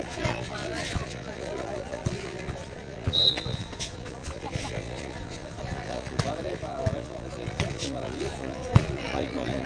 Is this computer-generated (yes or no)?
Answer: yes